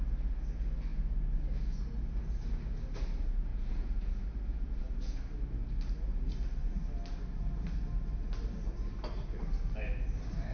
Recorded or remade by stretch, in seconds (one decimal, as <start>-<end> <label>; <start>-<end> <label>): 0.0-0.9 recorded; 0.9-1.4 remade; 1.4-3.5 recorded; 3.5-4.1 remade; 4.1-4.5 recorded; 4.5-5.2 remade; 5.2-10.5 recorded